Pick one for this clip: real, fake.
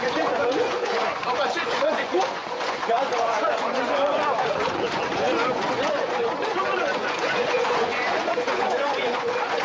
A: fake